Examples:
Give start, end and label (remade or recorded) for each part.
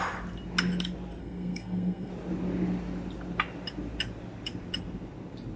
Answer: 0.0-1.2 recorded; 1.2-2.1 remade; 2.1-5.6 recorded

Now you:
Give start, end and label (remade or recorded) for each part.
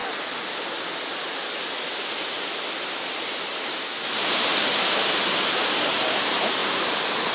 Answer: 0.0-7.3 recorded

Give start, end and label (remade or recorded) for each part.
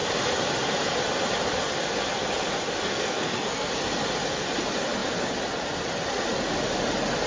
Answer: 0.0-2.9 recorded; 2.9-3.7 remade; 3.7-7.3 recorded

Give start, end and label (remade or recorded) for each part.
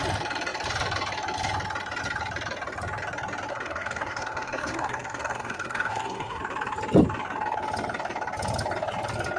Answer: 0.0-3.5 recorded; 3.5-6.4 remade; 6.4-9.4 recorded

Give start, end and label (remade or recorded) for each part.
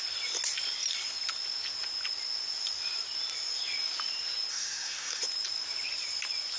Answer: 0.0-4.5 recorded; 4.5-5.2 remade; 5.2-6.6 recorded